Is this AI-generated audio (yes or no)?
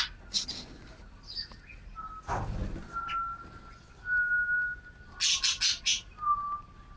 no